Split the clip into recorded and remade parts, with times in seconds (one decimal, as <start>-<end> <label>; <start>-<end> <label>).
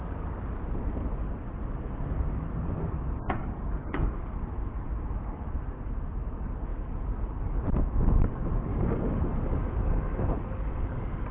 0.0-3.4 recorded; 3.4-4.2 remade; 4.2-8.7 recorded; 8.7-9.3 remade; 9.3-11.3 recorded